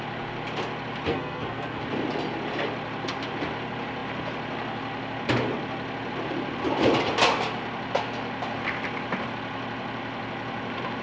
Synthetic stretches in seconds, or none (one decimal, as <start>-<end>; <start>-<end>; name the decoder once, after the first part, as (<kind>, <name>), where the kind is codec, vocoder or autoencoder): 1.1-1.8 (codec, SNAC)